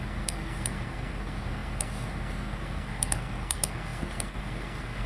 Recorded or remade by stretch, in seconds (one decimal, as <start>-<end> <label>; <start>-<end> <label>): 0.0-5.1 remade